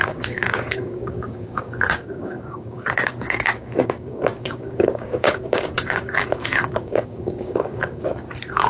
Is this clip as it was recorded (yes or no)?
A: no